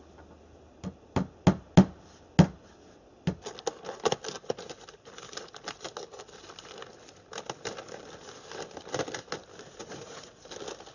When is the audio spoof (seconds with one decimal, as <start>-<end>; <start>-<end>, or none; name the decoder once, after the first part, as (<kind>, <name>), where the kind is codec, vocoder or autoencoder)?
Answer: 9.8-10.4 (vocoder, Vocos)